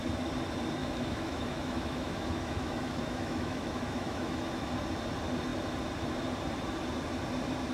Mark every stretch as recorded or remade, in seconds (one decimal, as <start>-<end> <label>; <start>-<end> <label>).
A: 0.0-0.8 recorded; 0.8-4.7 remade; 4.7-7.7 recorded